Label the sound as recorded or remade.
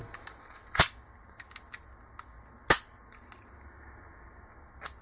recorded